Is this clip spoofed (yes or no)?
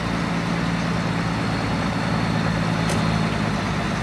no